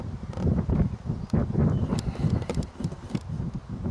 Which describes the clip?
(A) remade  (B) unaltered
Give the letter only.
A